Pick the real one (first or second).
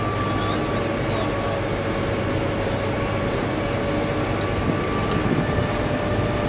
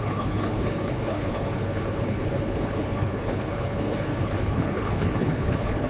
first